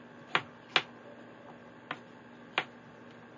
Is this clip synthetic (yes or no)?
no